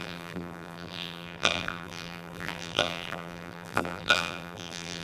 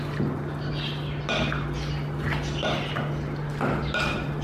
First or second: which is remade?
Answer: first